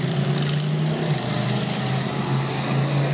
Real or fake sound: real